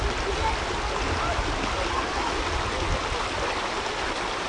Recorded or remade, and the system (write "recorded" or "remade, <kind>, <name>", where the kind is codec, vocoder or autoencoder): recorded